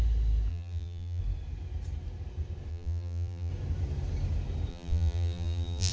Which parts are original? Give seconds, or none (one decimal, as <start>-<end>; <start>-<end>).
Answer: 0.0-0.5; 1.2-2.7; 3.5-4.7